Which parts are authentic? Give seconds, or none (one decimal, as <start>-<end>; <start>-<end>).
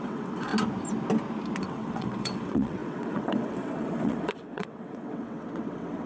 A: 0.5-1.6